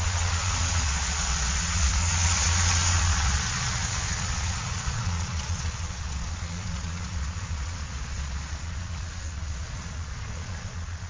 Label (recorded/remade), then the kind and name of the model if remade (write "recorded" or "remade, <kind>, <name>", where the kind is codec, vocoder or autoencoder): remade, vocoder, Vocos